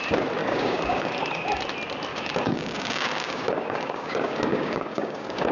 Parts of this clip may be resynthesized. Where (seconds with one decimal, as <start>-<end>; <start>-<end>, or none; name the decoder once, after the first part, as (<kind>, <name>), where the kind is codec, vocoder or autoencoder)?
0.4-1.6 (codec, DAC); 2.1-5.5